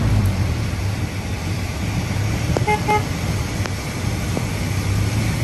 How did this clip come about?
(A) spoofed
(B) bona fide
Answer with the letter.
B